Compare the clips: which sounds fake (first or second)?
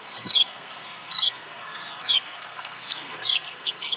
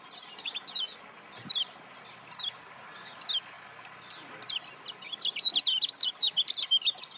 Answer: first